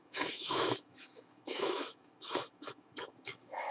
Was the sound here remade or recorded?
remade